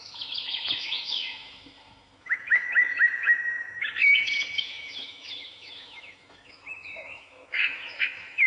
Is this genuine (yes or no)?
no